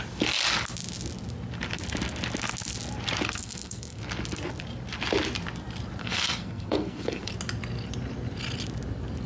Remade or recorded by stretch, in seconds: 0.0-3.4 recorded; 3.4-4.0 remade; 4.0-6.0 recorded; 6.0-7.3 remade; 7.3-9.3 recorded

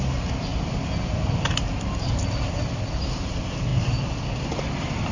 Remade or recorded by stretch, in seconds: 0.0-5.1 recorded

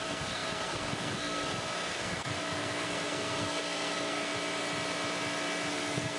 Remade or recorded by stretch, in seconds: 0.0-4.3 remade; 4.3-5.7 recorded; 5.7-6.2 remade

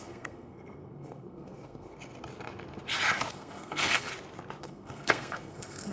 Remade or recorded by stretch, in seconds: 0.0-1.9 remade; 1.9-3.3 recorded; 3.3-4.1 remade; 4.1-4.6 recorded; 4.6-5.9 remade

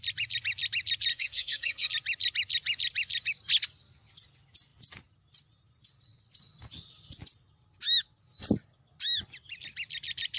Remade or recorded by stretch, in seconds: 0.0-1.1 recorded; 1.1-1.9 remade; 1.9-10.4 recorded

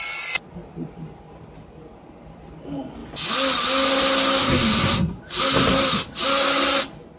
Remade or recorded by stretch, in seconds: 0.0-4.4 recorded; 4.4-5.2 remade; 5.2-7.2 recorded